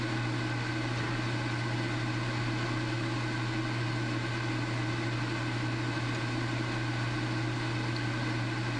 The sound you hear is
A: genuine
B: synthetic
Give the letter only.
A